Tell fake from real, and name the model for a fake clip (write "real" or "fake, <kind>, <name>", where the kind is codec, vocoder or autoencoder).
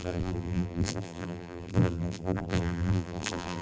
fake, vocoder, BigVGAN v2